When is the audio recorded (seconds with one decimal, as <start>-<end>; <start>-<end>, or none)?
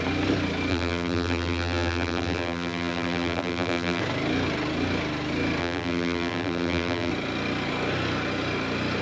0.0-0.7; 4.0-5.6; 7.1-9.0